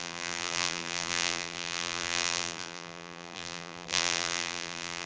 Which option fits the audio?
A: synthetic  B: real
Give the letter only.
A